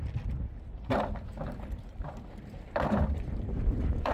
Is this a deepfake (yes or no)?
yes